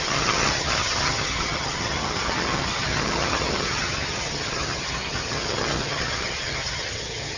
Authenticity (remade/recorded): remade